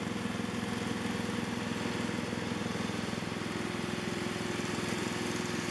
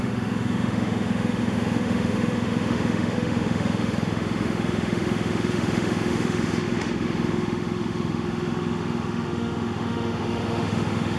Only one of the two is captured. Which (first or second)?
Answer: first